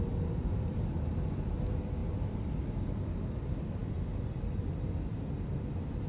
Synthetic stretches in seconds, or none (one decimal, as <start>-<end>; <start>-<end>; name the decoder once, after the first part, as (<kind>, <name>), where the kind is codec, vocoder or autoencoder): 2.0-2.6 (vocoder, BigVGAN v2)